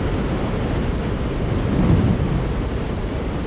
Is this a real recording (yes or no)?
yes